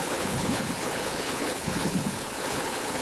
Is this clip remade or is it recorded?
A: remade